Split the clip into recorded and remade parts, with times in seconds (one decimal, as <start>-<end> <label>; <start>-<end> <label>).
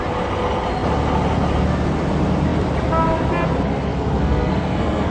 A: 0.0-3.9 recorded; 3.9-5.1 remade